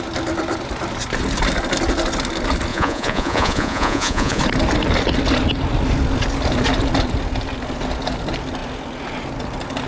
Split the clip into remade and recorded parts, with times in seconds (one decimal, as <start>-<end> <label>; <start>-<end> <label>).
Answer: 0.0-2.7 recorded; 2.7-4.4 remade; 4.4-9.9 recorded